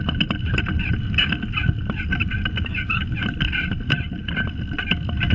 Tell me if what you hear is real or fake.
real